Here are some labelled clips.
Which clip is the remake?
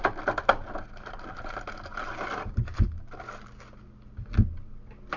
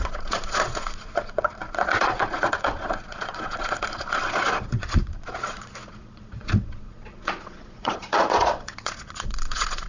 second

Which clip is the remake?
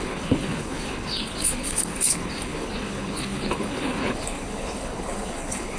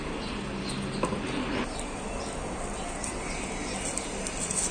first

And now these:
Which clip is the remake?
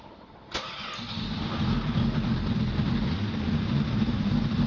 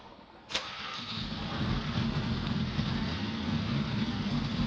second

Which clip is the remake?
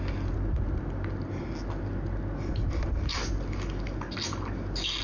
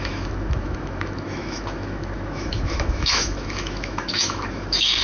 second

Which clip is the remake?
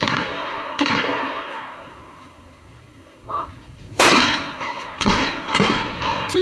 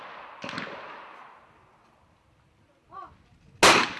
first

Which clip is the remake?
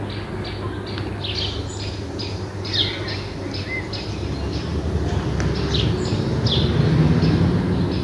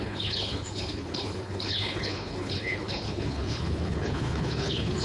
second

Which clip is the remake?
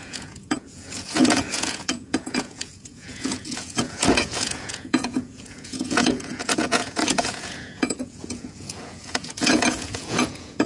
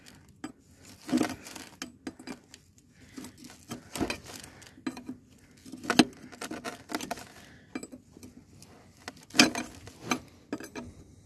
first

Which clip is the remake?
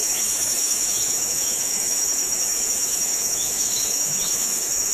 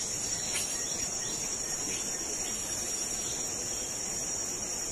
first